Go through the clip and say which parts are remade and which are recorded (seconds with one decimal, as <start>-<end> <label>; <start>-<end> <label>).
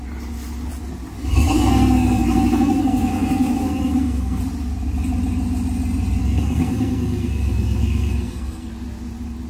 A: 0.0-1.2 recorded; 1.2-4.4 remade; 4.4-6.2 recorded; 6.2-8.7 remade; 8.7-9.5 recorded